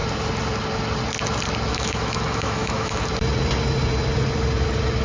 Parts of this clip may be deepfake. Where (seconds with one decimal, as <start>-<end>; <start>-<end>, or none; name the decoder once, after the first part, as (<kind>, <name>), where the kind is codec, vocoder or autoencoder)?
1.7-3.1 (autoencoder, DAC-VAE)